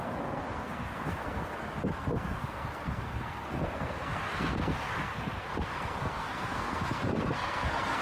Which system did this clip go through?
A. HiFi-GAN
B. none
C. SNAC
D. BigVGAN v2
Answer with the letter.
C